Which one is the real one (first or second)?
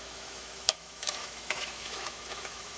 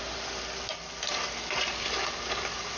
second